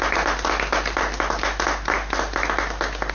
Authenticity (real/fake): real